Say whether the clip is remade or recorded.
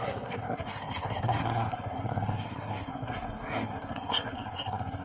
remade